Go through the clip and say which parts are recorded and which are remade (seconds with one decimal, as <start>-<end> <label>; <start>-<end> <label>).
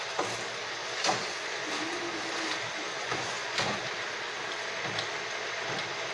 0.0-0.8 recorded; 0.8-1.7 remade; 1.7-2.9 recorded; 2.9-3.8 remade; 3.8-6.1 recorded